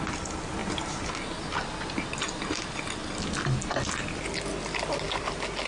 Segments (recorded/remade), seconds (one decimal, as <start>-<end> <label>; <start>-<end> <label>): 0.0-5.7 recorded